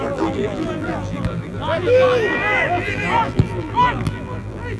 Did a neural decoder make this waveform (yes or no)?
yes